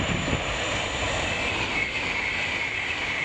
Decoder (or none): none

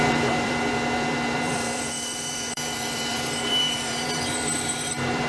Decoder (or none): vocoder, BigVGAN v2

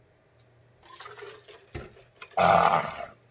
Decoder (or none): none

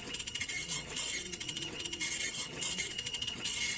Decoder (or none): vocoder, WaveNeXt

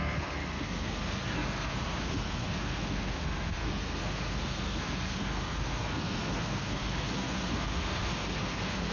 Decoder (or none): codec, SNAC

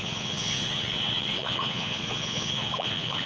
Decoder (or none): vocoder, Vocos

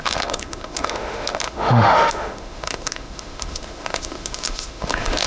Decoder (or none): autoencoder, DAC-VAE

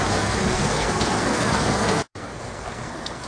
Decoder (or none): codec, SNAC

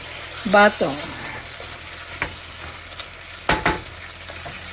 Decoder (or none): none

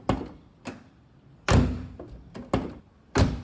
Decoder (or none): none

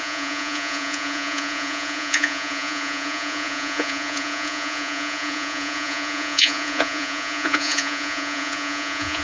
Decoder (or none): vocoder, Vocos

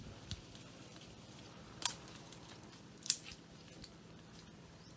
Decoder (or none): vocoder, BigVGAN v2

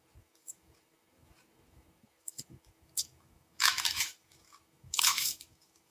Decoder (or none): autoencoder, DAC-VAE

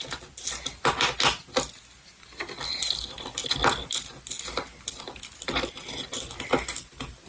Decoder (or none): none